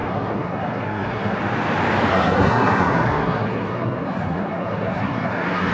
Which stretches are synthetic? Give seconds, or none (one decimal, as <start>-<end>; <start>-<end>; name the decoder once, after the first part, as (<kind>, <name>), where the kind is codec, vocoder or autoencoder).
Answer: 0.0-1.4 (codec, SNAC); 2.1-5.7